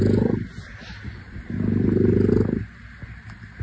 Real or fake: real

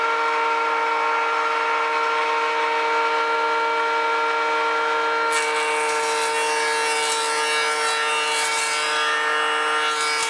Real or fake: real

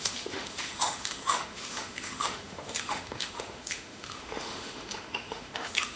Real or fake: fake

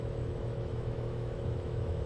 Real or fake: fake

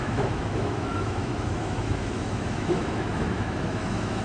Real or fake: fake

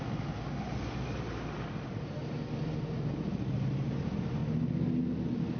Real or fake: real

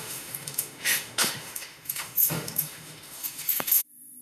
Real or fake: fake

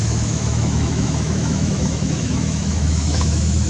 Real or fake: fake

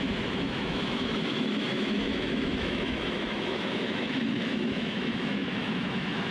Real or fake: fake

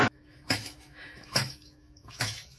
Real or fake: fake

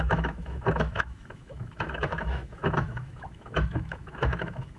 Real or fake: fake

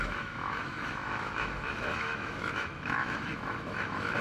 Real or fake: fake